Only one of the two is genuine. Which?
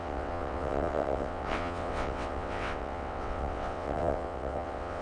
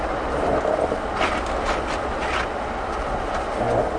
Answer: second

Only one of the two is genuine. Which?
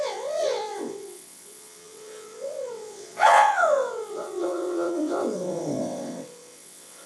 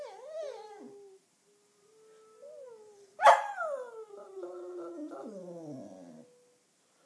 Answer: second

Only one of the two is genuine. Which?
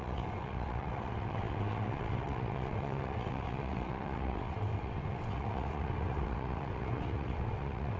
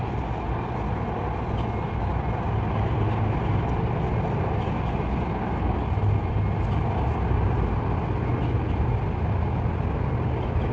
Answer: second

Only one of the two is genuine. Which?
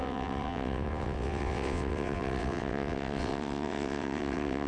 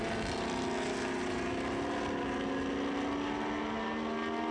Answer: second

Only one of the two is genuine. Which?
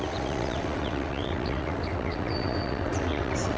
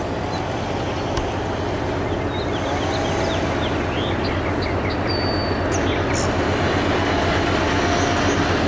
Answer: second